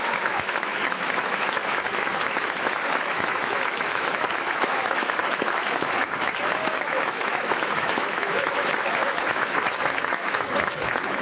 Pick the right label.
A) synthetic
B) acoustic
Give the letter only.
A